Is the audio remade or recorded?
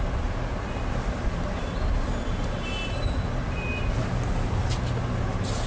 recorded